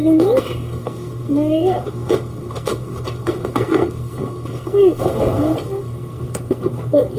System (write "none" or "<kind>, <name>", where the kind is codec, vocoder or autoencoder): codec, SNAC